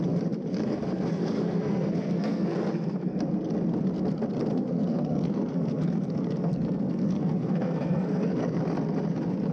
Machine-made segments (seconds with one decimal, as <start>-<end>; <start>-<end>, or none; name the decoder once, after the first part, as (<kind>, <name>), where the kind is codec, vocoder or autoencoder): 0.5-3.2 (codec, SNAC); 4.5-8.6